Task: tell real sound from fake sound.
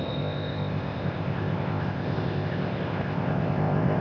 fake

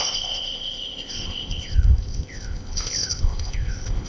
fake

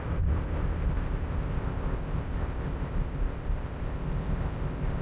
fake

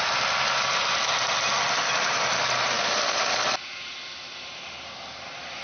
real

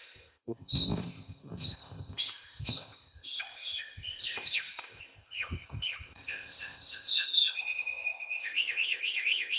fake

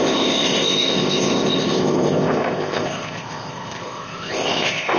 fake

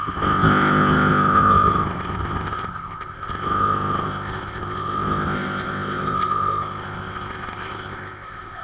fake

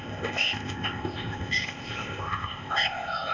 fake